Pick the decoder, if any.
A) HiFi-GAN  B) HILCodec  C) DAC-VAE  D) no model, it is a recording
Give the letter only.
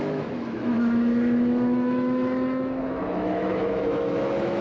C